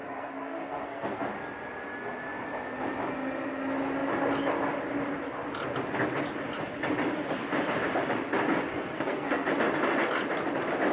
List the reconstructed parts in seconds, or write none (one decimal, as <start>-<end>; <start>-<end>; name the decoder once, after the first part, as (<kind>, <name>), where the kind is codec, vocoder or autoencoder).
0.0-1.2 (codec, SNAC); 8.7-9.5